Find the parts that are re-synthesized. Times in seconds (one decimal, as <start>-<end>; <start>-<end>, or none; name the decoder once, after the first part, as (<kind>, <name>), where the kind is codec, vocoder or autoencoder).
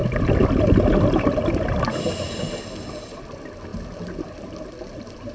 none